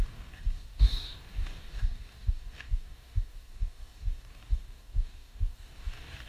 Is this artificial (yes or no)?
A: yes